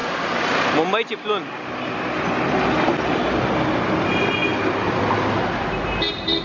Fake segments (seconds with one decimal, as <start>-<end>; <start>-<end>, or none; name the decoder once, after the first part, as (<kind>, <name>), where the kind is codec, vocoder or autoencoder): none